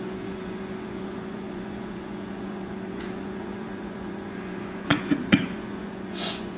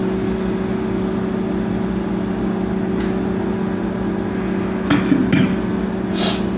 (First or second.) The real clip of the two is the second